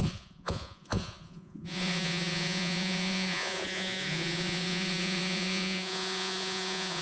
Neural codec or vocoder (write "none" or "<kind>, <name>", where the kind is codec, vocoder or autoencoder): vocoder, Vocos